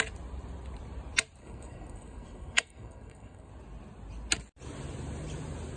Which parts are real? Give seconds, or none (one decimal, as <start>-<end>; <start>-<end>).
0.0-1.4; 3.5-5.8